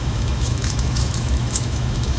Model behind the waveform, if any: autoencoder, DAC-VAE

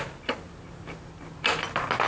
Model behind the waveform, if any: none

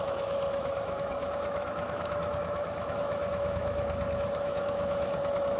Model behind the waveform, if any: autoencoder, DAC-VAE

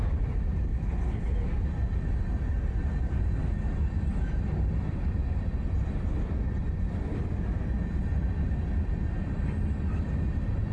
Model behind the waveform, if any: none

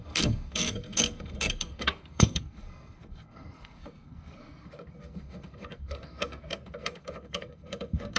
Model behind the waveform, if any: codec, SNAC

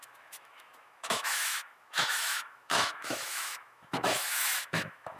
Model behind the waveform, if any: autoencoder, DAC-VAE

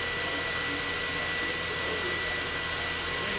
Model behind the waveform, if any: none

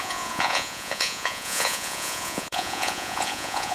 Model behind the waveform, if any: vocoder, Vocos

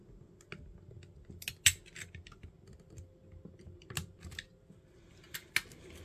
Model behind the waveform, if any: none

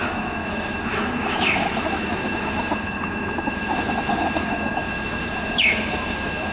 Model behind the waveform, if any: autoencoder, DAC-VAE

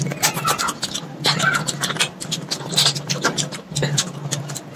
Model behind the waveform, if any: none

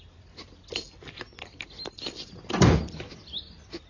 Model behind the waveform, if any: none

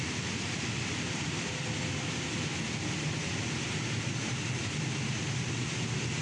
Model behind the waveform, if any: none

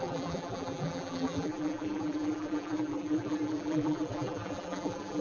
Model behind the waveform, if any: vocoder, BigVGAN v2